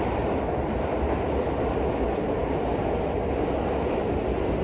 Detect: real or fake real